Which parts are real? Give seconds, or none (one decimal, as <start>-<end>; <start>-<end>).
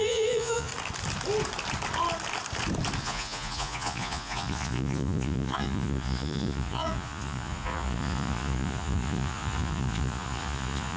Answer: 0.7-3.0